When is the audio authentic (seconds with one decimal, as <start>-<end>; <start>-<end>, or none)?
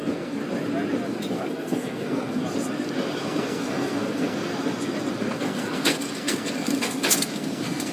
0.4-1.3; 2.4-3.2; 4.5-5.1